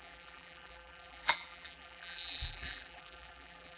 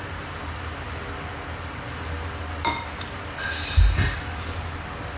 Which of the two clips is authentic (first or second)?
second